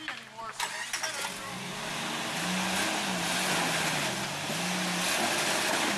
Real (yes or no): yes